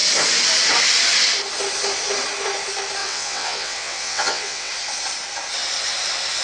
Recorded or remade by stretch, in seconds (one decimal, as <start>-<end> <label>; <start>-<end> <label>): 0.0-3.0 recorded; 3.0-4.7 remade; 4.7-6.4 recorded